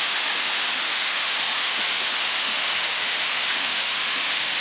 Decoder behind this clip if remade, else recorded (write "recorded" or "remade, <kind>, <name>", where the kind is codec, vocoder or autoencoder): remade, autoencoder, DAC-VAE